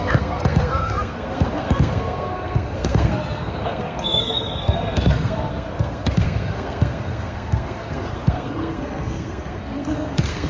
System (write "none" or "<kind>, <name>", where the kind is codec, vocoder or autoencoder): codec, SNAC